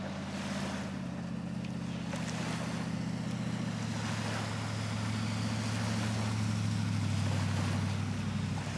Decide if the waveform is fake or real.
real